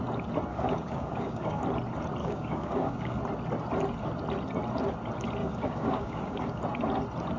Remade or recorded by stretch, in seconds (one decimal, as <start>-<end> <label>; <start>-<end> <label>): 0.0-0.5 recorded; 0.5-1.6 remade; 1.6-2.2 recorded; 2.2-3.2 remade; 3.2-5.4 recorded; 5.4-6.6 remade; 6.6-7.4 recorded